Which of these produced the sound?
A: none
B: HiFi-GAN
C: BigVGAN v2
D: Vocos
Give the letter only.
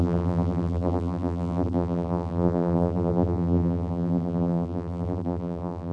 C